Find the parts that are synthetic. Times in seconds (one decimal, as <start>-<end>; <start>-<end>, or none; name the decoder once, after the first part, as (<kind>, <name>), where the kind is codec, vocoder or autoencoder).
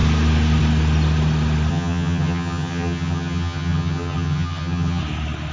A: 1.7-5.0 (vocoder, HiFi-GAN)